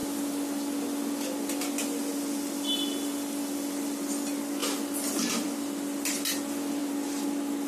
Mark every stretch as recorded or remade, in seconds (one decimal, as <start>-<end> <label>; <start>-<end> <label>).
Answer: 0.0-7.7 recorded